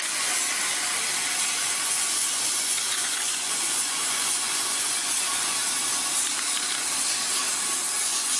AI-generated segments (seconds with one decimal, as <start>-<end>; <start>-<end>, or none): 0.0-0.4; 1.6-5.6; 8.0-8.4